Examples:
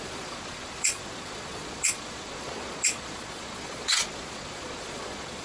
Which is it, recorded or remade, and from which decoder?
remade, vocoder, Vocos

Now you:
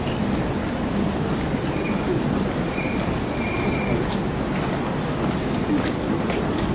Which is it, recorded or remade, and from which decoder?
recorded